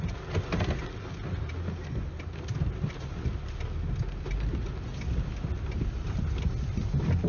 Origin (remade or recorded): recorded